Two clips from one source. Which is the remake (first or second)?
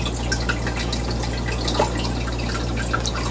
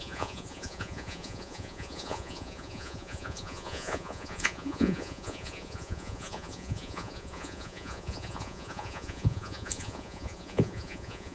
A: second